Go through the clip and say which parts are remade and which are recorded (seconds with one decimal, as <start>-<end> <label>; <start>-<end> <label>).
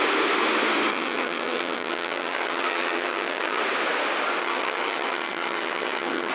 0.0-0.9 recorded; 0.9-3.6 remade; 3.6-4.4 recorded; 4.4-6.3 remade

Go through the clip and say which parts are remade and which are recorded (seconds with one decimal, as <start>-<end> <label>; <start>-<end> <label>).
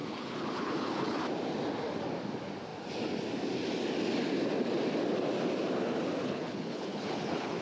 0.0-1.2 remade; 1.2-6.2 recorded; 6.2-7.6 remade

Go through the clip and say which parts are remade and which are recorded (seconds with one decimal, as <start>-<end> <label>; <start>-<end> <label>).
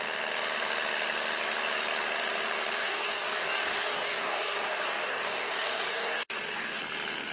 0.0-2.8 recorded; 2.8-6.8 remade; 6.8-7.3 recorded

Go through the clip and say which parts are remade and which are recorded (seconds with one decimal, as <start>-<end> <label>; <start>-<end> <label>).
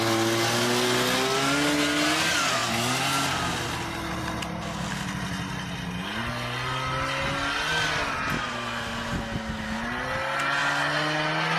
0.0-11.6 recorded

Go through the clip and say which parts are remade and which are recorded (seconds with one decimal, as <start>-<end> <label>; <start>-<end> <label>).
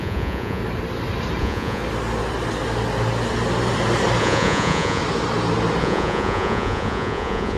0.0-0.6 remade; 0.6-1.4 recorded; 1.4-1.8 remade; 1.8-4.2 recorded; 4.2-5.0 remade; 5.0-5.8 recorded; 5.8-7.6 remade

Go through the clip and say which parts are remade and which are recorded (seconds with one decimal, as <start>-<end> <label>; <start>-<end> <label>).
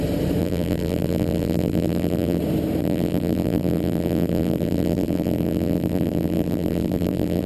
0.0-0.4 recorded; 0.4-2.4 remade; 2.4-2.8 recorded; 2.8-7.5 remade